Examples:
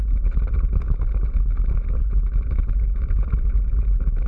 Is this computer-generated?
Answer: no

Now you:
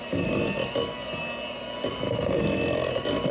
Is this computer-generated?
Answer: no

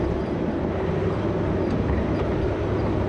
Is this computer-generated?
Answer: no